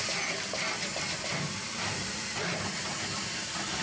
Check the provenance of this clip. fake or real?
real